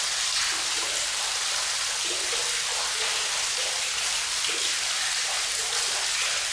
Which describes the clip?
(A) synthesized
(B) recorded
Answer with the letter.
B